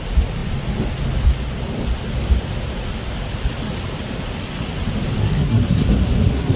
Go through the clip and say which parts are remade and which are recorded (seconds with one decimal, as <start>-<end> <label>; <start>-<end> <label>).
0.0-5.2 recorded; 5.2-6.6 remade